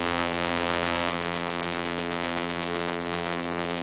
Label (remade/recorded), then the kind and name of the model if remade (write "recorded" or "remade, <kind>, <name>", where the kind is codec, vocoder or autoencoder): remade, vocoder, BigVGAN v2